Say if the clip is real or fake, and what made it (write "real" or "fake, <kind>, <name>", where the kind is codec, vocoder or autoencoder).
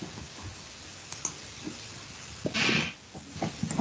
real